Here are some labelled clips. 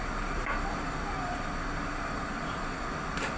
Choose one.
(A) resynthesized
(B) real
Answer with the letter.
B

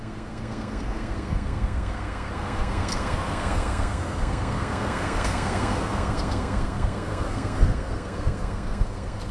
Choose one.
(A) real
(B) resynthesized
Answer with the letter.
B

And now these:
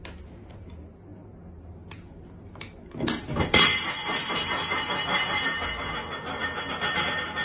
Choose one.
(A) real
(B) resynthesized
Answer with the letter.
A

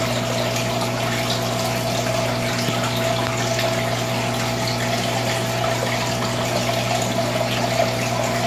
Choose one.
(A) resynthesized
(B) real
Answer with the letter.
B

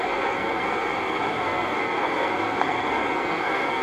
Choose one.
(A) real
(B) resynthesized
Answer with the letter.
B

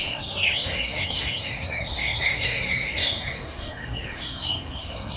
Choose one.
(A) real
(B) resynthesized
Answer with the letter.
B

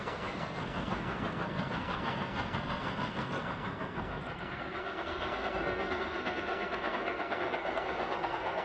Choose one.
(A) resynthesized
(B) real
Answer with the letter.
A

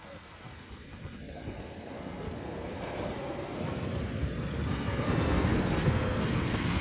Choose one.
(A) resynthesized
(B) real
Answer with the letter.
A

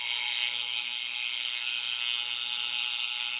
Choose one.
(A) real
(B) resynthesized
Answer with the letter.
B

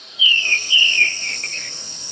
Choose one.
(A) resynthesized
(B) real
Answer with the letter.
A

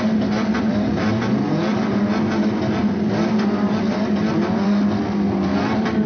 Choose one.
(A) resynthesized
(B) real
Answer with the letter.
B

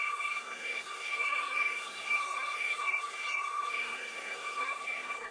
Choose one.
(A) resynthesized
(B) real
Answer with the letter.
A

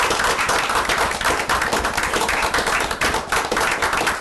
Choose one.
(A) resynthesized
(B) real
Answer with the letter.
B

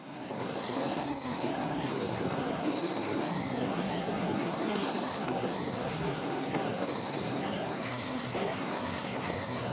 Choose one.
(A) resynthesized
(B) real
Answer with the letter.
A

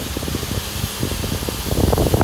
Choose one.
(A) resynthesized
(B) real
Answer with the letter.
B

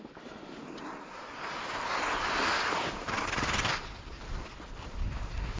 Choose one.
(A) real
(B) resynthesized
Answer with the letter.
A